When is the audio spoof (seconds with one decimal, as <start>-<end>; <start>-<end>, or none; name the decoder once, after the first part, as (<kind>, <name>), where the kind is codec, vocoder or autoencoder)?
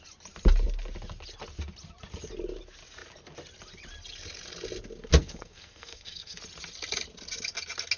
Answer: 5.2-6.4 (codec, SNAC)